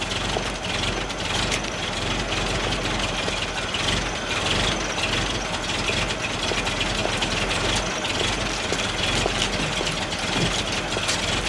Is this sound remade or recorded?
recorded